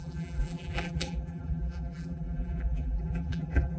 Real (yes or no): no